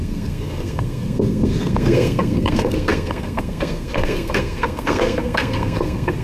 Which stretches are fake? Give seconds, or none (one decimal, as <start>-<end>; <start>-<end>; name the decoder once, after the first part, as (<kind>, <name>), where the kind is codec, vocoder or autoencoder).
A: 0.0-6.2 (codec, SNAC)